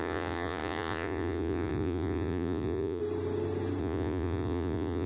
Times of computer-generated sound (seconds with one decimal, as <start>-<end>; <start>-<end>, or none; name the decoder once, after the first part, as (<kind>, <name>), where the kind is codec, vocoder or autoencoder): 0.0-3.0 (vocoder, Vocos); 3.8-5.1